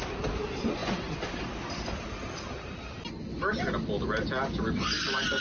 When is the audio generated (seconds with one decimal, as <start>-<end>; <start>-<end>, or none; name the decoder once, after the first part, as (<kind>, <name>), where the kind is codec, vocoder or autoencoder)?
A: none